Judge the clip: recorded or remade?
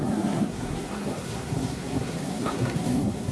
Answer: remade